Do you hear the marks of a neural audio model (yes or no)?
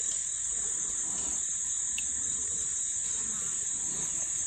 no